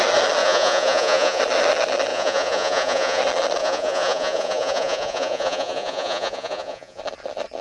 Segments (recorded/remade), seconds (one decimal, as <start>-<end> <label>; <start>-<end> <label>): 0.0-0.4 recorded; 0.4-1.4 remade; 1.4-2.1 recorded; 2.1-3.2 remade; 3.2-3.6 recorded; 3.6-7.0 remade; 7.0-7.6 recorded

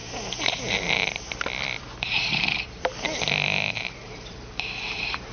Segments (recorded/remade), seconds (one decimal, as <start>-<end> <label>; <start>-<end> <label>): 0.0-3.2 remade; 3.2-4.0 recorded; 4.0-5.3 remade

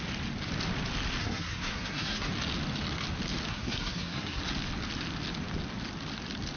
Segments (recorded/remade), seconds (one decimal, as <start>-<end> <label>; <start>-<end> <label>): 0.0-1.2 recorded; 1.2-2.3 remade; 2.3-3.5 recorded; 3.5-4.4 remade; 4.4-6.6 recorded

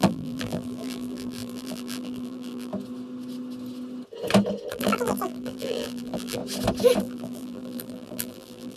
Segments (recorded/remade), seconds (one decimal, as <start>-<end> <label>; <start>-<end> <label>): 0.0-2.7 remade; 2.7-4.7 recorded; 4.7-6.4 remade; 6.4-7.0 recorded; 7.0-8.8 remade

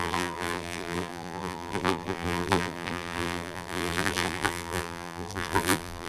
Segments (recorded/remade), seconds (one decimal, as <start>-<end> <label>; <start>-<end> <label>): 0.0-6.1 remade